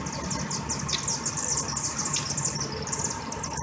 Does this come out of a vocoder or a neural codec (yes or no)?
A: no